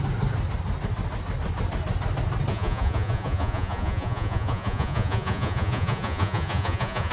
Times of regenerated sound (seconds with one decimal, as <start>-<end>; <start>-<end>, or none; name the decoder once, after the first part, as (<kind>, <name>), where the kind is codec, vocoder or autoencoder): 2.5-7.1 (vocoder, Vocos)